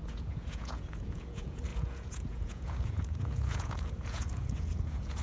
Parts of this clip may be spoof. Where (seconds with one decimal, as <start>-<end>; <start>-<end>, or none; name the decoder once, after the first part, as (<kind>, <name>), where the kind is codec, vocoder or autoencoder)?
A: 0.0-5.2 (vocoder, Vocos)